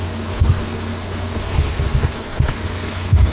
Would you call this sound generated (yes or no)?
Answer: yes